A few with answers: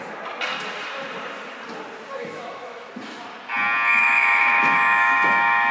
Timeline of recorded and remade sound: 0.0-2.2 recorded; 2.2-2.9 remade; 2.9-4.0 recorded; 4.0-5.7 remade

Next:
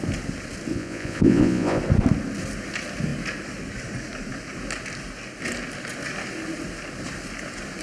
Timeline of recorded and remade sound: 0.0-0.7 recorded; 0.7-1.8 remade; 1.8-7.8 recorded